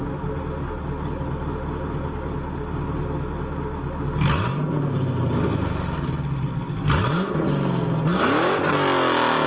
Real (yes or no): yes